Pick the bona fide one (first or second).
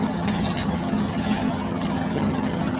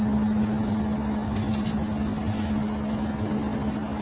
second